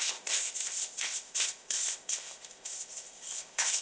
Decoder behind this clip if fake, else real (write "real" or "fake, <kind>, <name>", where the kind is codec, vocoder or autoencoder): fake, codec, ZipCodec